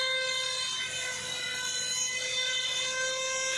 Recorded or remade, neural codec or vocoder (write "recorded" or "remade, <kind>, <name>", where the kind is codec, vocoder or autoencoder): recorded